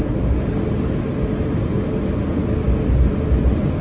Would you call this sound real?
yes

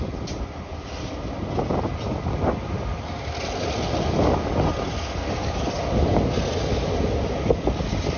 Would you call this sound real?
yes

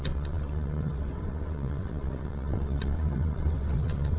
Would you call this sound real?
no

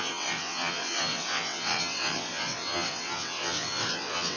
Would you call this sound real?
no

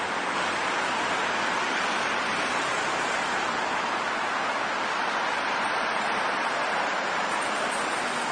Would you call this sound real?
yes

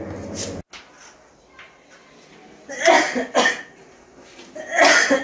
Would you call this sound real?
yes